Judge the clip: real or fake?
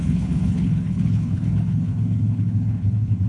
fake